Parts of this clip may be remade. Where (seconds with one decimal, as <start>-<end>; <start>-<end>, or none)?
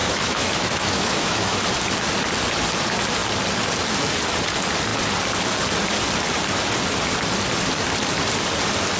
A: 0.0-1.6